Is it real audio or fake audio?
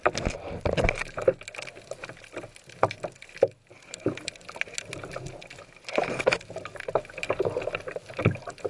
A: real